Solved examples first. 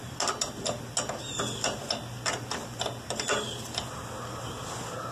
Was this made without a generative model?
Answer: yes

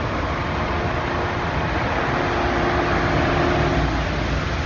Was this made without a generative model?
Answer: yes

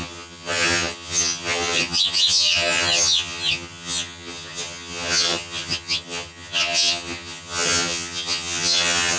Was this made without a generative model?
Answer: no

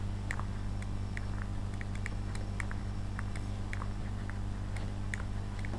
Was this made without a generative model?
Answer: yes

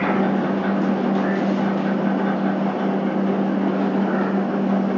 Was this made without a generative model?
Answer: yes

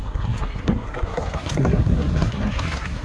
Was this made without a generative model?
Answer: no